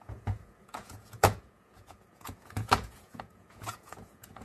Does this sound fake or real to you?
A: fake